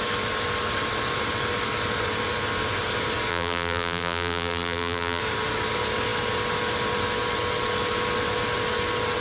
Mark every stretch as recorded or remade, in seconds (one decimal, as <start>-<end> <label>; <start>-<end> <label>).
0.0-3.3 recorded; 3.3-5.2 remade; 5.2-9.2 recorded